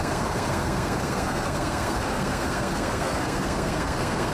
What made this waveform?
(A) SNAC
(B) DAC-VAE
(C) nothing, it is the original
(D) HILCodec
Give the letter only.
A